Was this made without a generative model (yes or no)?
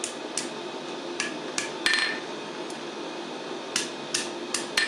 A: yes